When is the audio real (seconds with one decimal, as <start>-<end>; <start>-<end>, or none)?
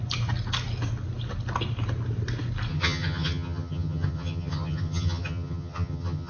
0.0-2.7